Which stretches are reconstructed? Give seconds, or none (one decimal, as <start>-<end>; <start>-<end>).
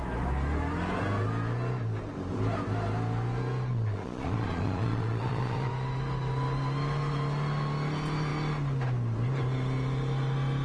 3.7-5.7